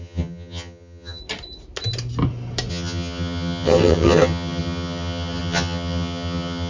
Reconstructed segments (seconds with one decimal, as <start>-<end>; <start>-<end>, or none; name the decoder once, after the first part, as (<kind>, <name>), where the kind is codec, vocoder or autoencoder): 0.0-1.2 (vocoder, HiFi-GAN); 2.7-6.7